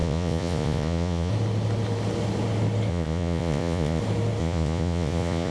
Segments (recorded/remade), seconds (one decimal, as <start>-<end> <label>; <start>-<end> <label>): 0.0-1.3 remade; 1.3-2.9 recorded; 2.9-4.0 remade; 4.0-4.4 recorded; 4.4-5.5 remade